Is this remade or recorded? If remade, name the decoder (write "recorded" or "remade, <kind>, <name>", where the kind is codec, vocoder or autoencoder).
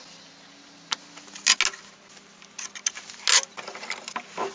recorded